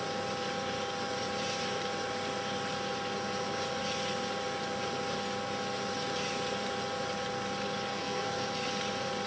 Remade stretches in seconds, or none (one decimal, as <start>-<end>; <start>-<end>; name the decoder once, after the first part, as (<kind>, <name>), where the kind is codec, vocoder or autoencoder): 7.9-8.5 (codec, SNAC)